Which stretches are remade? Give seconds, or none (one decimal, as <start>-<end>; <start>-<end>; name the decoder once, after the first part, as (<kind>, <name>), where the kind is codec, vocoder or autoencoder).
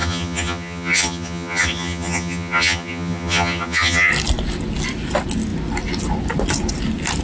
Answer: 0.0-4.1 (vocoder, HiFi-GAN)